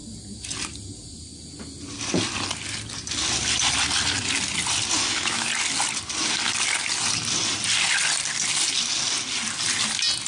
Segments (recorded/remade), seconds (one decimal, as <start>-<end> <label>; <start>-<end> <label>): 0.0-5.0 recorded; 5.0-5.5 remade; 5.5-10.3 recorded